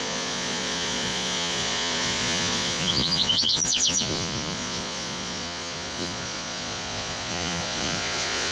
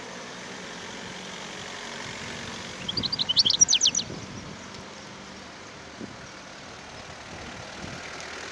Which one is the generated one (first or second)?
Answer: first